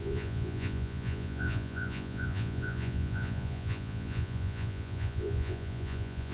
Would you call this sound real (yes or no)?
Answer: no